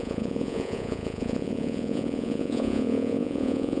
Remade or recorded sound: remade